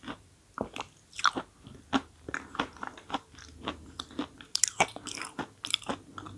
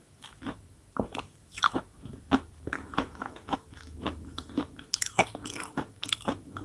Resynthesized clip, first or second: second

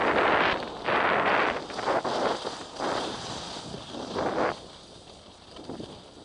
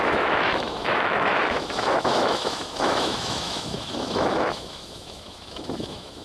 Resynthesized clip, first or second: second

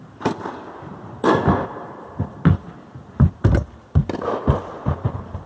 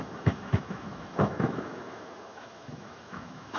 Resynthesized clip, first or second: second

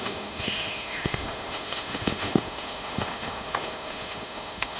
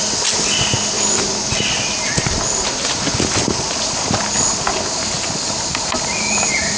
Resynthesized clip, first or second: first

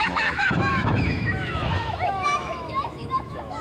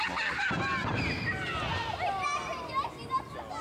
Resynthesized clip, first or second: first